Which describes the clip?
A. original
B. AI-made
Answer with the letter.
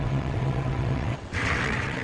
B